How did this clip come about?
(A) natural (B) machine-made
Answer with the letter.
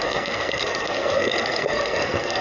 B